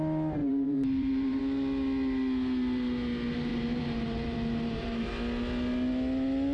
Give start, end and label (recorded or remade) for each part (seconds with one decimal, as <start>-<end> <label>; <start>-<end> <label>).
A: 0.0-0.4 recorded; 0.4-1.4 remade; 1.4-3.5 recorded; 3.5-5.1 remade; 5.1-6.5 recorded